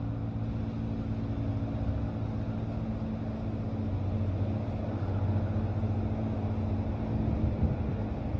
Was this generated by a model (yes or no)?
no